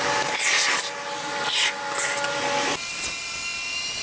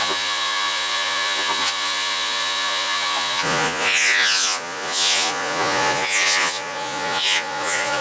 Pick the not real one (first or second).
second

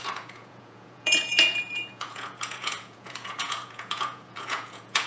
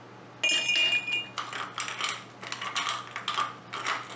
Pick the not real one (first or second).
first